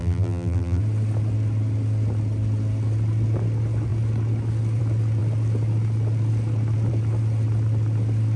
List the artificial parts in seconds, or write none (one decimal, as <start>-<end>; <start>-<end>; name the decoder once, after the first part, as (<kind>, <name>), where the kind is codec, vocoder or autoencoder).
0.0-0.8 (vocoder, BigVGAN v2)